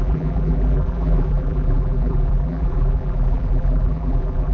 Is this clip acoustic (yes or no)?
no